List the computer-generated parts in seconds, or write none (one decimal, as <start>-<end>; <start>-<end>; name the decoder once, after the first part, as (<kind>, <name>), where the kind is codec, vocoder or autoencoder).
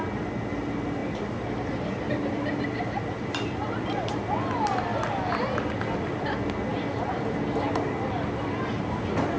1.0-3.7 (vocoder, BigVGAN v2); 6.7-7.4